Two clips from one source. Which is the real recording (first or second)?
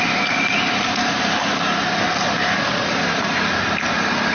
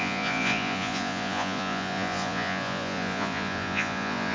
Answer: first